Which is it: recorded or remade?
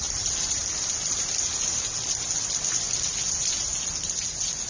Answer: recorded